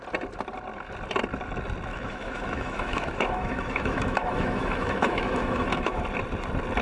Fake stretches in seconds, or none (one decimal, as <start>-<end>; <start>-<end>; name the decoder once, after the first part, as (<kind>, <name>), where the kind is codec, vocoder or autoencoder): 1.9-6.0 (autoencoder, DAC-VAE)